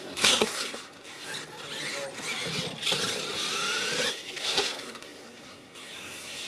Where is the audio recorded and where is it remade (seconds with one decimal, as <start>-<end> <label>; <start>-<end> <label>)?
0.0-1.3 remade; 1.3-4.1 recorded; 4.1-6.5 remade